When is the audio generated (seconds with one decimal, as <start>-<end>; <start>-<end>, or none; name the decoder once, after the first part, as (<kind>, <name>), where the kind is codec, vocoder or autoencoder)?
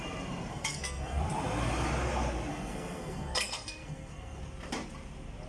0.5-1.2 (codec, SNAC); 2.5-4.4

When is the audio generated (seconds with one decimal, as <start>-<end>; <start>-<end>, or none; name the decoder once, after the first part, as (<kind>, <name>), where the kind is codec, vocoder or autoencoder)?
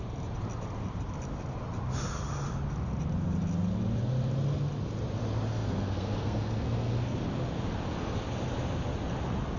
5.5-7.2 (codec, SNAC)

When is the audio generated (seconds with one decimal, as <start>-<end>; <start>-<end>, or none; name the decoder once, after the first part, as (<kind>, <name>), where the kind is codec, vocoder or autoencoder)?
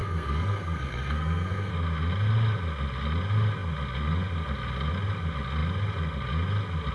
0.0-1.7 (codec, SNAC)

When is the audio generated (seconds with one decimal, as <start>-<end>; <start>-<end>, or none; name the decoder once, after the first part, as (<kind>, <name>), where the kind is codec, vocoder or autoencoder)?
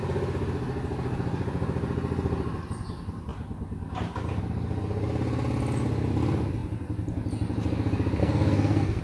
8.2-9.0 (codec, SNAC)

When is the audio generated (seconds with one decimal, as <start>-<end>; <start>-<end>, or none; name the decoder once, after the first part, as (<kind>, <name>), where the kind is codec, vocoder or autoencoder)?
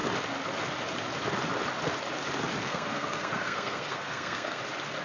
2.6-4.6 (codec, SNAC)